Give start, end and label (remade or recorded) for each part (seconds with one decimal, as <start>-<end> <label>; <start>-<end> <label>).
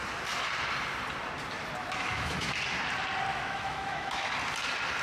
0.0-1.8 recorded; 1.8-2.5 remade; 2.5-3.3 recorded; 3.3-4.3 remade; 4.3-5.0 recorded